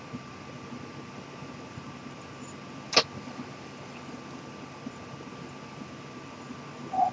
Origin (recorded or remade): recorded